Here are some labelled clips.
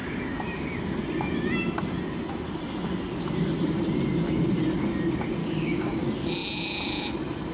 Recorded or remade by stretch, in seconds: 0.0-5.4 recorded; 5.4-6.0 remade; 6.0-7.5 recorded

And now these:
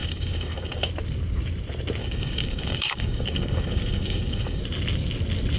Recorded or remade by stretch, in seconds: 0.0-0.9 remade; 0.9-2.0 recorded; 2.0-4.6 remade; 4.6-5.6 recorded